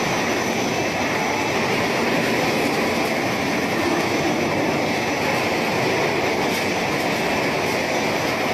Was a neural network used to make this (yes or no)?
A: no